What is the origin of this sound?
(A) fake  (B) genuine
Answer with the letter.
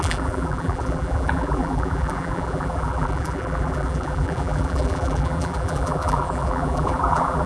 A